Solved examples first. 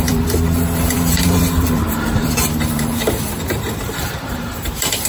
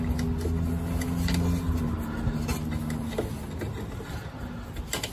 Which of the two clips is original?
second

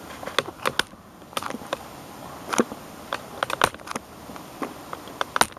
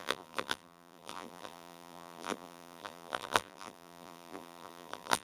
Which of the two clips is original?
first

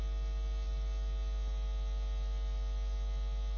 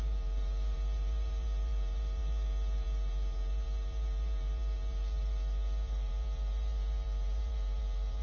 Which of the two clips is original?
first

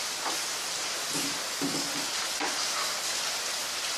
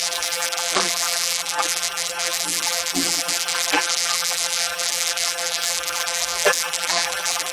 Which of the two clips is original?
first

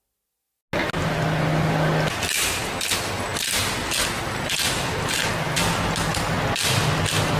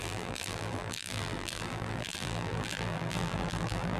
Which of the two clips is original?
first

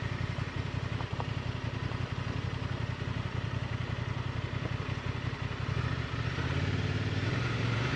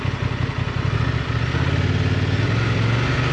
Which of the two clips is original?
second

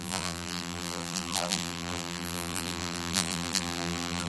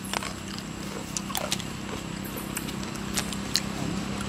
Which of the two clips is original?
second